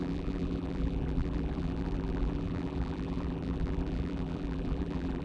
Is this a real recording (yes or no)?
no